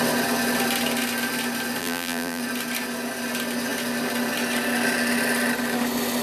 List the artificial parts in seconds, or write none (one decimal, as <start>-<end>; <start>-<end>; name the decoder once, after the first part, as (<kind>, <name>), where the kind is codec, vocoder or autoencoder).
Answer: 1.8-2.4 (vocoder, BigVGAN v2)

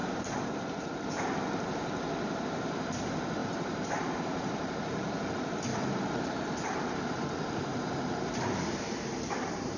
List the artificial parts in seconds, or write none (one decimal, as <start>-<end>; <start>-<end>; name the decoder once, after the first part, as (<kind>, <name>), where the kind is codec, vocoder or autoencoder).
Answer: 0.0-0.5 (vocoder, BigVGAN v2); 3.4-5.3; 5.7-7.0; 7.7-9.8

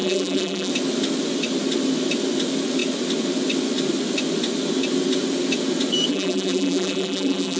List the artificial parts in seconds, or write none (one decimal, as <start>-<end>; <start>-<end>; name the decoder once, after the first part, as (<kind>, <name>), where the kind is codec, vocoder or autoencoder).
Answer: 0.0-0.7 (vocoder, BigVGAN v2); 6.1-7.6

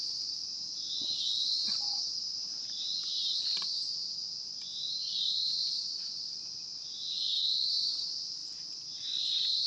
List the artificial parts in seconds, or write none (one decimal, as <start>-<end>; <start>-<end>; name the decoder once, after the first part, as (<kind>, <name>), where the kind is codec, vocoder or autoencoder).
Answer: 5.6-6.2 (vocoder, Vocos)

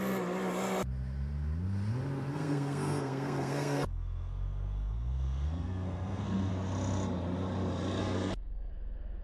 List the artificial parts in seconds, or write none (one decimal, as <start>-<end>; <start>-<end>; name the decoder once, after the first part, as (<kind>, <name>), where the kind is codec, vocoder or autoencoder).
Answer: 2.3-6.5 (codec, SNAC); 8.0-8.7

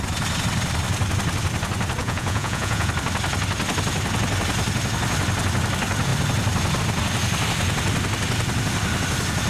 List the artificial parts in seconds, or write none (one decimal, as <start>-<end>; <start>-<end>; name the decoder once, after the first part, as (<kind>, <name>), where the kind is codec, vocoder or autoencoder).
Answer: 2.0-2.9 (vocoder, Vocos)

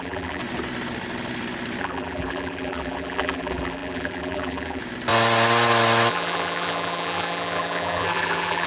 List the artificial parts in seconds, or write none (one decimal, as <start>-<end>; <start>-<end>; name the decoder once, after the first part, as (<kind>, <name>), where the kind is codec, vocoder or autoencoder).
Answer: 0.0-0.4 (vocoder, BigVGAN v2); 1.8-4.8; 6.1-8.7

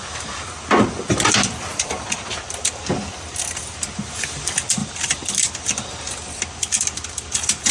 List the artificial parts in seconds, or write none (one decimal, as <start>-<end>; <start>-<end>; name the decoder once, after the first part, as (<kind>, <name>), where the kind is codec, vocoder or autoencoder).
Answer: 1.7-2.3 (vocoder, BigVGAN v2); 4.8-5.5